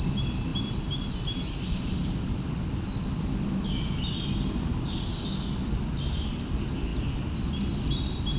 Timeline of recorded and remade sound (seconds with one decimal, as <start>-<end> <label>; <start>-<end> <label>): 0.0-8.4 recorded